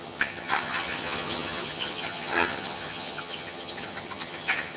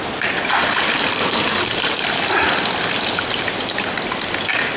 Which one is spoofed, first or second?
first